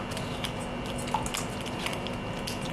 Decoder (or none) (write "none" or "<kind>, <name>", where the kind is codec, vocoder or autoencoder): none